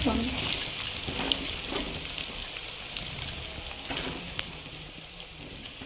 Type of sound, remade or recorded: recorded